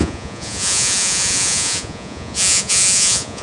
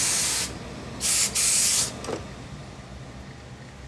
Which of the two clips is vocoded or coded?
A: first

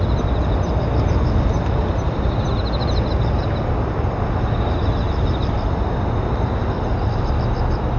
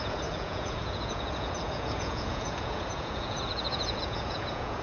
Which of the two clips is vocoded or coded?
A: second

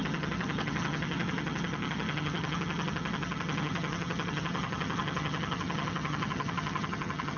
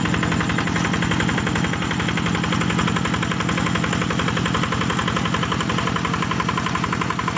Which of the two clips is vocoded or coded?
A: first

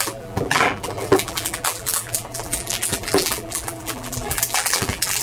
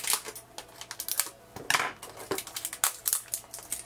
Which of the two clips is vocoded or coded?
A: first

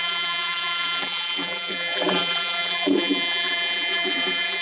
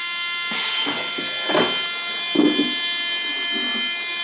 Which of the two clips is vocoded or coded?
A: first